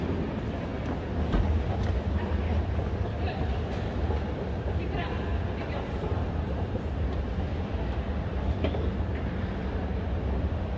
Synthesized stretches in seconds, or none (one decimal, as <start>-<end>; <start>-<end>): 5.3-7.7